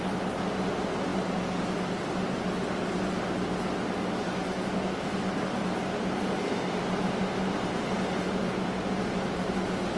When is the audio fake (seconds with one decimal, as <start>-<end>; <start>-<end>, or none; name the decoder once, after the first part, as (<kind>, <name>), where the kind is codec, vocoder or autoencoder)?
none